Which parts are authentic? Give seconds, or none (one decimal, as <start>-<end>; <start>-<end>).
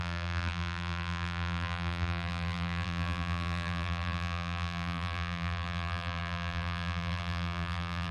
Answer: none